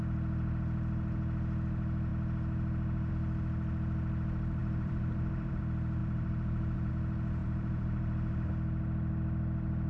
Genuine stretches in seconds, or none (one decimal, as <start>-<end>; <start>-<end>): 0.0-4.6; 5.6-6.0; 6.9-7.4; 8.5-9.9